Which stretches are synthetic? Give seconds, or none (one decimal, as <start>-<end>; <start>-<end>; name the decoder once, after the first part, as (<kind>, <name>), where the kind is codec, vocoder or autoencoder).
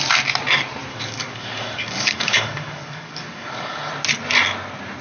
0.9-3.9 (codec, DAC)